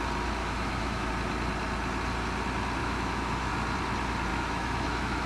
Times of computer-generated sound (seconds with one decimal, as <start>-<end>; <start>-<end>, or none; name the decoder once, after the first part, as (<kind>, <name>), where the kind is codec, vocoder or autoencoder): 0.4-1.1 (autoencoder, DAC-VAE); 2.8-3.5; 4.3-5.3